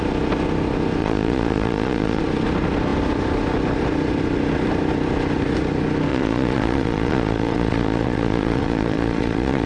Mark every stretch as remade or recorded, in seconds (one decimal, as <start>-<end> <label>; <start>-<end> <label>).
0.0-1.0 recorded; 1.0-2.2 remade; 2.2-6.1 recorded; 6.1-9.7 remade